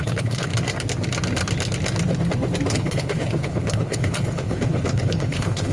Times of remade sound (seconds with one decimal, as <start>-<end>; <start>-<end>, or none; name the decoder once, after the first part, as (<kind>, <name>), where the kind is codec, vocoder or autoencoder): 0.0-0.5 (codec, HILCodec); 2.7-5.7